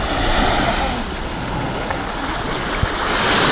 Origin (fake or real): real